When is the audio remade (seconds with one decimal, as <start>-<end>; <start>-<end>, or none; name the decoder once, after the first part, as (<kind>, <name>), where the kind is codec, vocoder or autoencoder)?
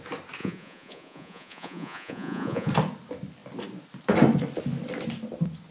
0.4-2.7 (vocoder, Vocos)